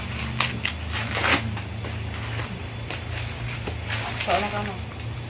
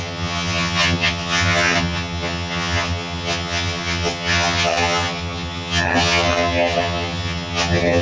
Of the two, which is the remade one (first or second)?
second